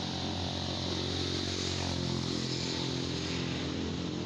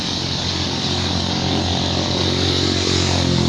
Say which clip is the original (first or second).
first